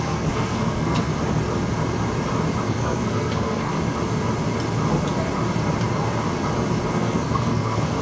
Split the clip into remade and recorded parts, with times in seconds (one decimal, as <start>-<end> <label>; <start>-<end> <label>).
0.0-1.1 remade; 1.1-2.7 recorded; 2.7-3.7 remade; 3.7-6.9 recorded; 6.9-8.0 remade